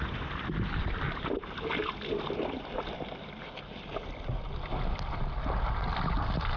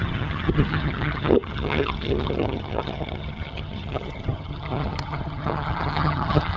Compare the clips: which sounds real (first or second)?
first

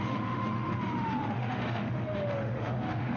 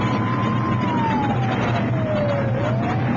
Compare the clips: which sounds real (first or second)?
second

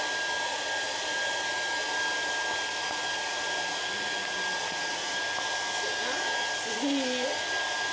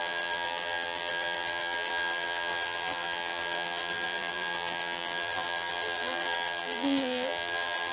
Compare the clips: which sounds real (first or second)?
first